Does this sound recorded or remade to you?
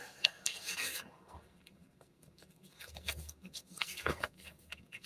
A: remade